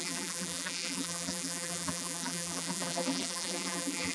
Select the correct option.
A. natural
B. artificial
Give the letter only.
B